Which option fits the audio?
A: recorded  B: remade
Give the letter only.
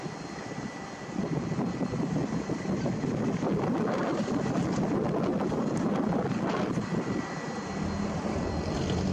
A